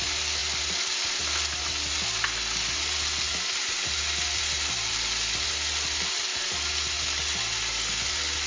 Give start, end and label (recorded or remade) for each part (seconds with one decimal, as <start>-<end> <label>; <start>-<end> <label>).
0.0-8.5 recorded